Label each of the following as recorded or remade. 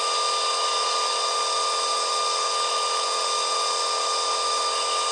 recorded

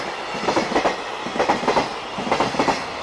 recorded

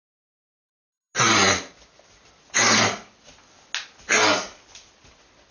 recorded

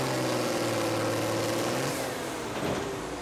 recorded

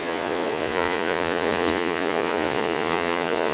remade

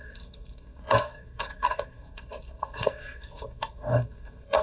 remade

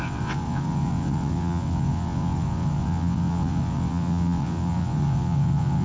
remade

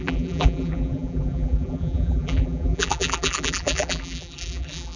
remade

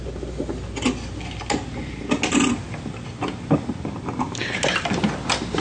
recorded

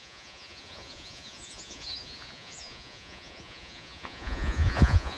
remade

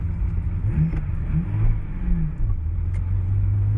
recorded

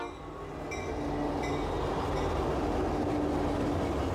recorded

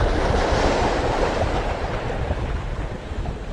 recorded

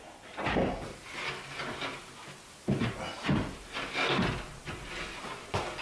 recorded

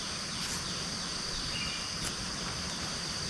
recorded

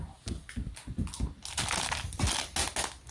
recorded